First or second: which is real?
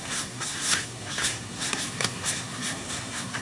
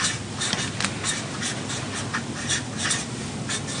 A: second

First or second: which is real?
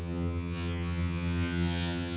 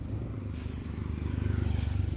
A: second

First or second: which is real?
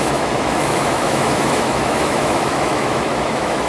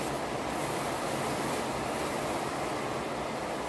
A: second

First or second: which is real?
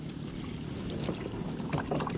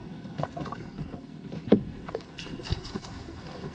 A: first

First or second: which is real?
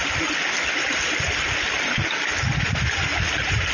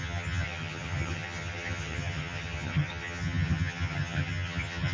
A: first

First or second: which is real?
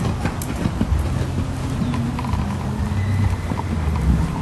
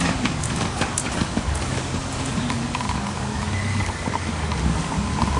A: first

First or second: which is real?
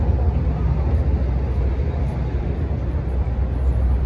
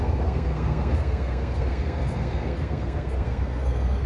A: first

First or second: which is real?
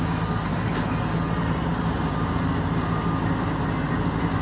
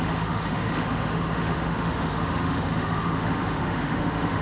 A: first